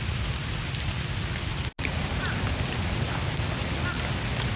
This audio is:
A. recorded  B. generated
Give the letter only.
A